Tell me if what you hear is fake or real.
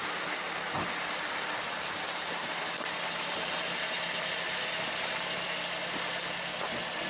real